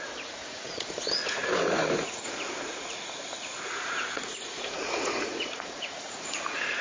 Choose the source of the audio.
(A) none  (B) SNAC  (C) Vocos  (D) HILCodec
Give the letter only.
C